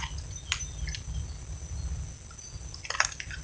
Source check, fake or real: real